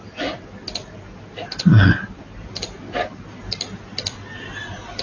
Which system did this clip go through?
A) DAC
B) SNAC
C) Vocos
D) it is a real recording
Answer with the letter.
D